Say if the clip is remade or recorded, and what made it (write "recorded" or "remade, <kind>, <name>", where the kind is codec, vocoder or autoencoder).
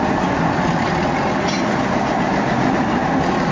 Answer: recorded